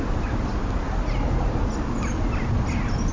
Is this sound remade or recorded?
recorded